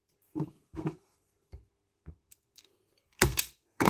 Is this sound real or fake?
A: fake